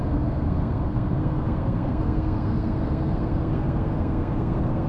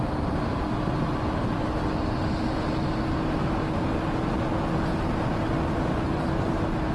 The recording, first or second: second